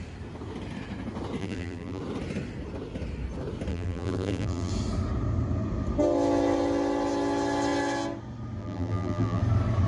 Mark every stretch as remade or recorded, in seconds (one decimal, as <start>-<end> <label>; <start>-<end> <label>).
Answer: 0.0-1.4 recorded; 1.4-2.0 remade; 2.0-3.7 recorded; 3.7-4.7 remade; 4.7-8.6 recorded; 8.6-9.4 remade; 9.4-9.9 recorded